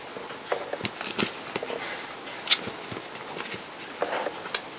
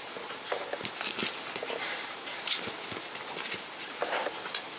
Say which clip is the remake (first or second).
second